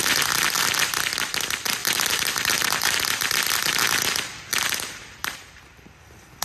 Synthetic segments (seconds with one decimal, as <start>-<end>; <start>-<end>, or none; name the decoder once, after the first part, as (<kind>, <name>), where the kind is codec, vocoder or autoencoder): 1.8-3.0 (vocoder, BigVGAN v2); 4.5-5.6